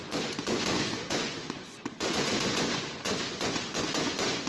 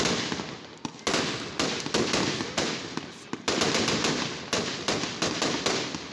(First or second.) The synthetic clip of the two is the first